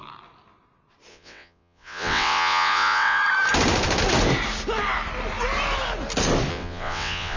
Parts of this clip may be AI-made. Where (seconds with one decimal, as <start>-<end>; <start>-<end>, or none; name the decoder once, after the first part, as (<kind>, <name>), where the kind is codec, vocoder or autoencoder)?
1.1-3.2 (vocoder, WaveNeXt); 6.5-7.4